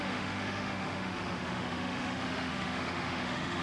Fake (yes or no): yes